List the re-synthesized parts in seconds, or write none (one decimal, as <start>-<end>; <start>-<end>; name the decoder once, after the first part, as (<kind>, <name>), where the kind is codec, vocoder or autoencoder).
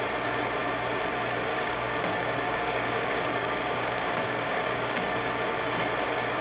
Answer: 1.5-5.3 (codec, DAC)